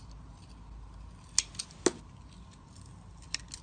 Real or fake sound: real